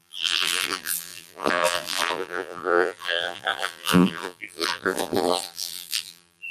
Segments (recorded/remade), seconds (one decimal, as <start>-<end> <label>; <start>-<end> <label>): 0.0-6.5 remade